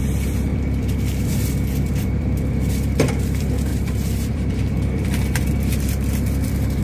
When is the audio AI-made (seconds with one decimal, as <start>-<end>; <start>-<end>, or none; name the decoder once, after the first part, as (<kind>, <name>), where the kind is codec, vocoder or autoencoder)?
0.0-6.8 (vocoder, BigVGAN v2)